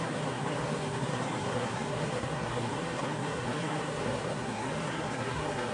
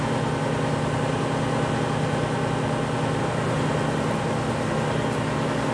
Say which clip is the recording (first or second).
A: second